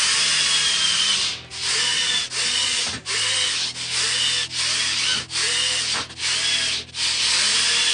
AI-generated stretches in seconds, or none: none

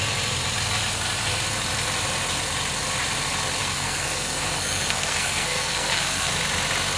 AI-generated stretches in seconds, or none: 3.6-6.3 (codec, SNAC)

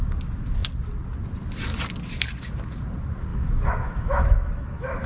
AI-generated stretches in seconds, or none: 3.3-5.1 (autoencoder, DAC-VAE)

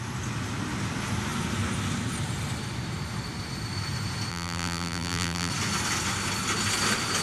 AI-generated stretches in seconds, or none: 4.3-5.5 (vocoder, BigVGAN v2)

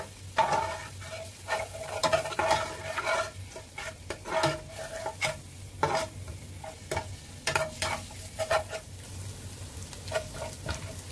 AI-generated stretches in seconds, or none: none

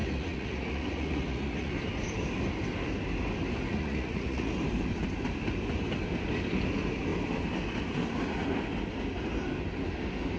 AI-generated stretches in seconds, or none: 0.0-1.7 (vocoder, Vocos); 3.7-4.6

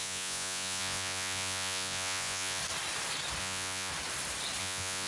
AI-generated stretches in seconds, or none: 0.0-2.6 (vocoder, Vocos); 3.4-3.9; 4.6-5.1

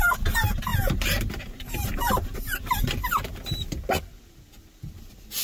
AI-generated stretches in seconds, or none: 0.7-3.9 (vocoder, BigVGAN v2)